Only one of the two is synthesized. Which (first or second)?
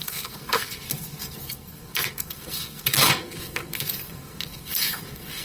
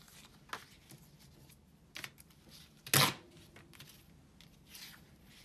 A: first